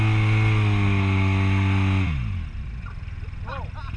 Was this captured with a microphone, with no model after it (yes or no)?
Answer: yes